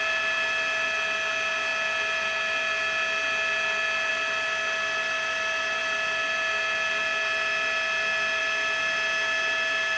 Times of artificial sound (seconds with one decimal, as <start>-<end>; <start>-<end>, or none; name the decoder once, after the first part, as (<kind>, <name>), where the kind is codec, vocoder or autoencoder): none